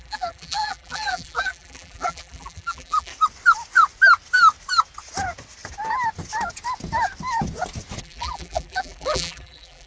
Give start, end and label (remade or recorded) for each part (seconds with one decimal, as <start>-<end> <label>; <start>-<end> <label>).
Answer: 0.0-3.1 remade; 3.1-8.0 recorded; 8.0-9.9 remade